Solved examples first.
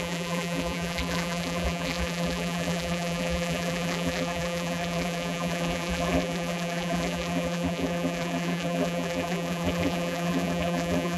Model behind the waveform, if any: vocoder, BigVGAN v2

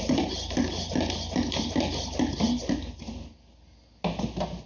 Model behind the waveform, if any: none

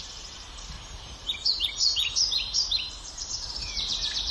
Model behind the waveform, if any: vocoder, BigVGAN v2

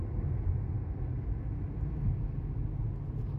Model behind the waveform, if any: none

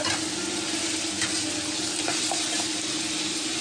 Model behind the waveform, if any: vocoder, BigVGAN v2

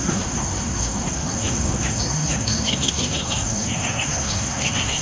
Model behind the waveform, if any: codec, SNAC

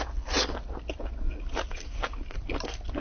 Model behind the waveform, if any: none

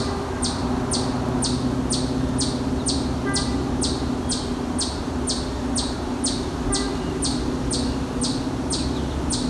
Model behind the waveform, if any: none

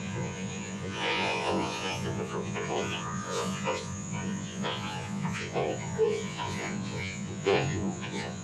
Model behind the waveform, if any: vocoder, Vocos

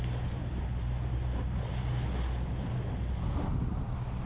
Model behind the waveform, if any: none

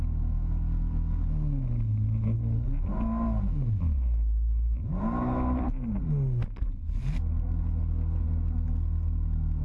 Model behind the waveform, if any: none